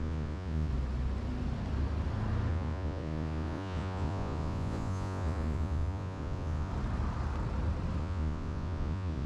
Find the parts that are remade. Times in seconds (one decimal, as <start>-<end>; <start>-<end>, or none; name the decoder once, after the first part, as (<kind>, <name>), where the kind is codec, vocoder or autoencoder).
0.0-0.7 (vocoder, Vocos); 2.5-6.7; 8.0-9.3